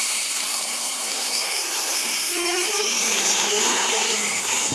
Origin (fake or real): fake